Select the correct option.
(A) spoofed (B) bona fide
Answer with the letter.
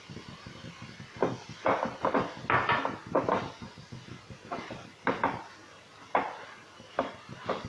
B